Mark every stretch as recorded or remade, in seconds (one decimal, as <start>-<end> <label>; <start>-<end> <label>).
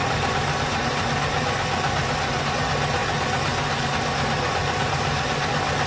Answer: 0.0-2.6 remade; 2.6-5.9 recorded